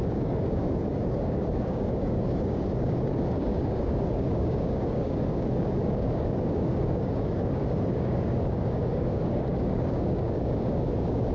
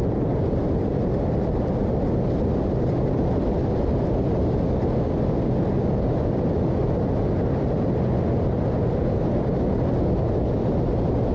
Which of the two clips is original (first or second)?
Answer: second